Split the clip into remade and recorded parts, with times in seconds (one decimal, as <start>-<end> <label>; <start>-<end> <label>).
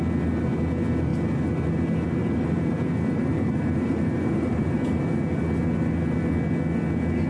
0.0-2.2 recorded; 2.2-5.0 remade; 5.0-7.3 recorded